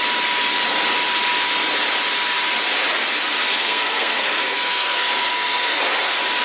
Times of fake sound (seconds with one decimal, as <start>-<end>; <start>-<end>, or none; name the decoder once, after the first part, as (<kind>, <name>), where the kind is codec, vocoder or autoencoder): 3.5-5.8 (codec, SNAC)